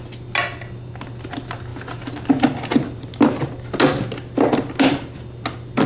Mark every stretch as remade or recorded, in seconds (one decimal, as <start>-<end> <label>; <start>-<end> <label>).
0.0-5.9 recorded